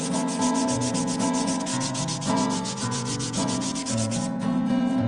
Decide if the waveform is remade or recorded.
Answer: remade